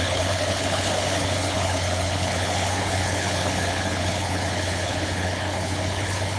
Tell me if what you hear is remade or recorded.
remade